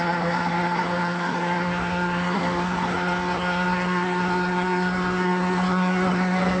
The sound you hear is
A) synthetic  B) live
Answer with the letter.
A